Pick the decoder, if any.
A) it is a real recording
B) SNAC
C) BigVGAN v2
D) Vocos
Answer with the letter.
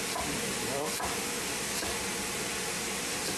A